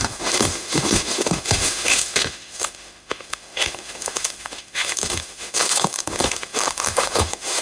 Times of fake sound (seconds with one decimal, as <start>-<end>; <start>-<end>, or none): 0.0-7.6